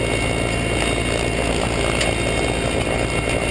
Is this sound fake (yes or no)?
no